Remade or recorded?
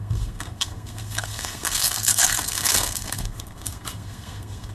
remade